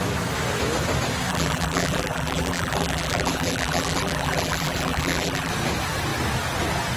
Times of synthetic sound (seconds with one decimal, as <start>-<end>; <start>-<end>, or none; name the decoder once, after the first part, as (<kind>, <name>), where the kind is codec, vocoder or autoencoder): 1.3-5.5 (vocoder, BigVGAN v2)